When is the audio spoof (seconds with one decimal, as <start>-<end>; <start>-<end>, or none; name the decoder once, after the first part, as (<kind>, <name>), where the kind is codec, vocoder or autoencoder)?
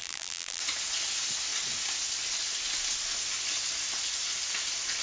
0.0-0.6 (vocoder, BigVGAN v2)